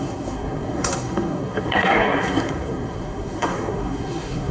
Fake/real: fake